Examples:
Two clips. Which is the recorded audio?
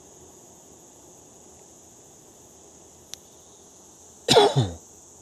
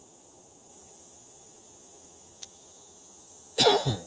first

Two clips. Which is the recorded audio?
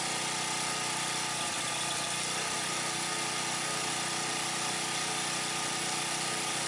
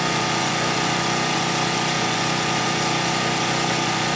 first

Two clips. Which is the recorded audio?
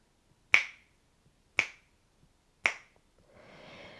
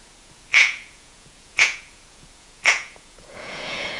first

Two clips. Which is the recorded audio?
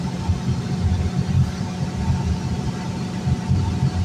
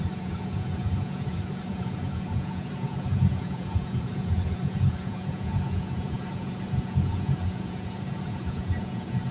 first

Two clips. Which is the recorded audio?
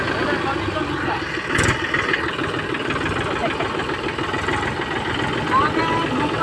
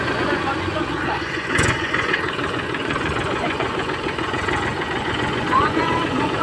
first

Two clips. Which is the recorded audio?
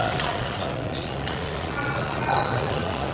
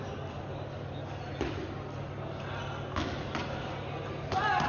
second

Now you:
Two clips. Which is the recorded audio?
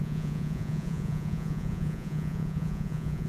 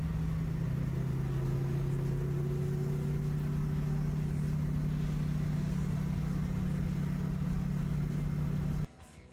second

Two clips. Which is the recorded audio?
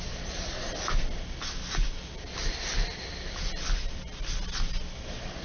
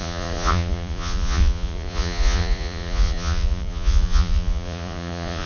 first